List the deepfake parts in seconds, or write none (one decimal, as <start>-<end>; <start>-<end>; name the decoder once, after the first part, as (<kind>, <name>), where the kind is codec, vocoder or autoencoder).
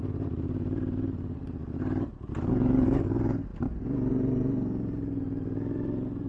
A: 0.0-1.6 (vocoder, BigVGAN v2); 2.5-3.5; 4.1-6.3